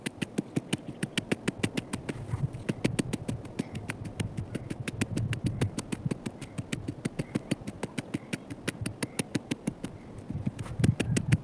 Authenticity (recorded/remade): recorded